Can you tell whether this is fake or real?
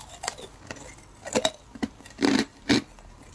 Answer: real